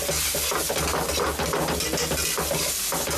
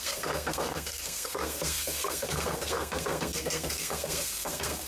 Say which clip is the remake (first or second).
second